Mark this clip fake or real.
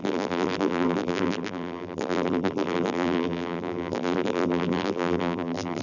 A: fake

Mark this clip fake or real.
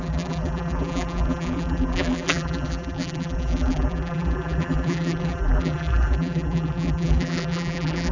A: fake